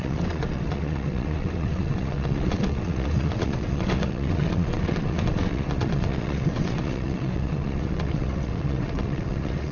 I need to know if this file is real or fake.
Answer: fake